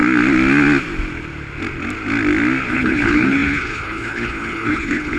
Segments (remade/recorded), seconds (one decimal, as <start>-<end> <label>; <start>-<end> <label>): 0.0-2.7 recorded; 2.7-5.2 remade